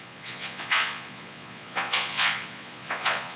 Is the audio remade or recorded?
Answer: remade